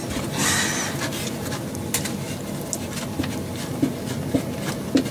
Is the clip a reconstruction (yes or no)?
no